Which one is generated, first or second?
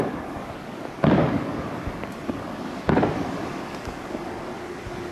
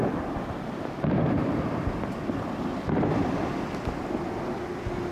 first